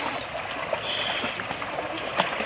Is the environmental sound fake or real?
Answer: real